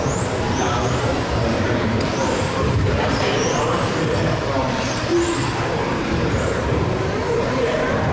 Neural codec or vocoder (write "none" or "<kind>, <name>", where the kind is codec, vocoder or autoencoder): vocoder, BigVGAN v2